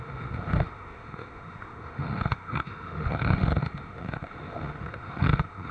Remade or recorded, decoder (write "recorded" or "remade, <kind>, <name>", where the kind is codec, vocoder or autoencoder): remade, autoencoder, DAC-VAE